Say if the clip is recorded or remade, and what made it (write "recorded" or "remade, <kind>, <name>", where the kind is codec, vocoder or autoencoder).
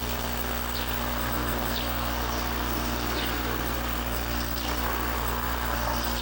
remade, codec, SNAC